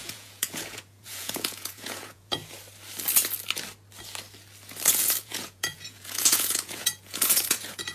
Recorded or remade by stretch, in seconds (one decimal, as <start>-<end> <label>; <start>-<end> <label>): 0.0-2.4 remade; 2.4-4.9 recorded; 4.9-7.9 remade